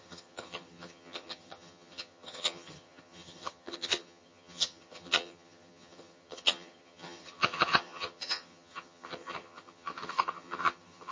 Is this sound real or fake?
fake